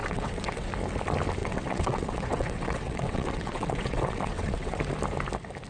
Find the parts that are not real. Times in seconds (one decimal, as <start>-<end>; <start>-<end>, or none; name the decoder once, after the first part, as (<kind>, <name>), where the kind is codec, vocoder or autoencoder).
0.0-0.7 (vocoder, WaveNeXt); 1.4-4.8